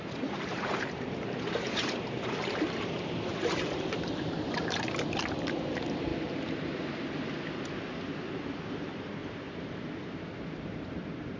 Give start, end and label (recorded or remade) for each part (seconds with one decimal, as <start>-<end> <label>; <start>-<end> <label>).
0.0-6.1 remade; 6.1-8.5 recorded; 8.5-11.4 remade